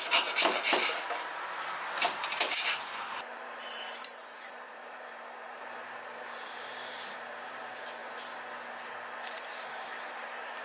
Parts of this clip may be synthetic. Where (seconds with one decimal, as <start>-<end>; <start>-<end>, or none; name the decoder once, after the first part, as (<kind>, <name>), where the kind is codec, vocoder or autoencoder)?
0.0-8.0 (vocoder, BigVGAN v2); 9.3-10.6